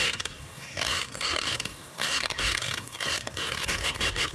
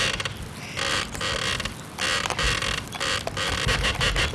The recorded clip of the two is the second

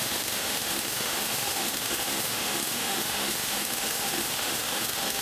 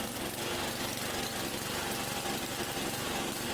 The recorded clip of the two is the second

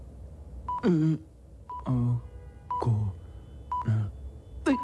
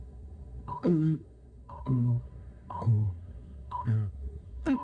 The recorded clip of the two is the first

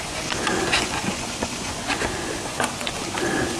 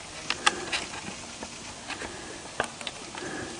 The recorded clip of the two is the second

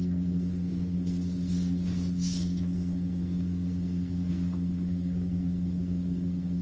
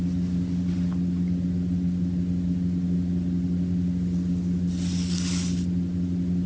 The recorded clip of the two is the second